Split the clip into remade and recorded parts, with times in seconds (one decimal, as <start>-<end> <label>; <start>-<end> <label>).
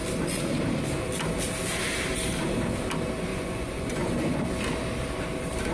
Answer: 0.0-3.3 recorded; 3.3-4.4 remade; 4.4-5.7 recorded